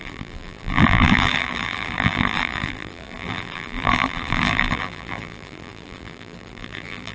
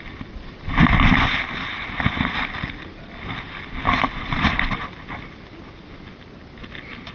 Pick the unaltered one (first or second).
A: second